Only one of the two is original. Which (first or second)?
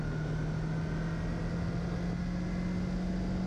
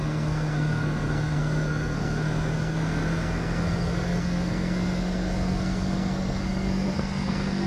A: first